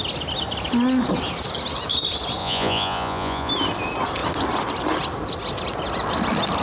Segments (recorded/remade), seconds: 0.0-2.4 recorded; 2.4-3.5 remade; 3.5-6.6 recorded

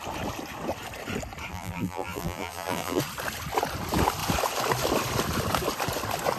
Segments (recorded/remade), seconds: 0.0-1.5 recorded; 1.5-3.0 remade; 3.0-6.4 recorded

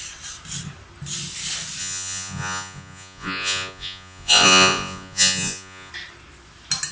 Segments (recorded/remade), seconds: 0.0-1.8 recorded; 1.8-5.9 remade; 5.9-6.9 recorded

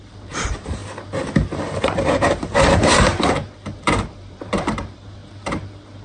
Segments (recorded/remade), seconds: 0.0-0.8 remade; 0.8-1.8 recorded; 1.8-3.1 remade; 3.1-3.8 recorded; 3.8-5.2 remade; 5.2-6.0 recorded

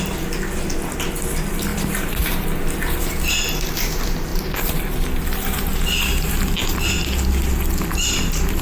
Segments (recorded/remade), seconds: 0.0-1.7 recorded; 1.7-2.3 remade; 2.3-8.6 recorded

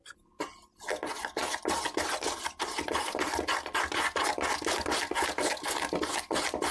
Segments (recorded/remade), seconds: 0.0-6.7 recorded

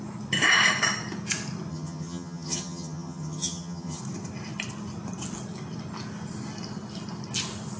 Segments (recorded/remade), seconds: 0.0-1.7 recorded; 1.7-4.0 remade; 4.0-7.8 recorded

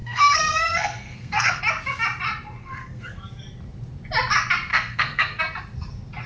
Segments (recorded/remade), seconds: 0.0-1.6 remade; 1.6-2.6 recorded; 2.6-3.2 remade; 3.2-4.7 recorded; 4.7-5.4 remade; 5.4-6.3 recorded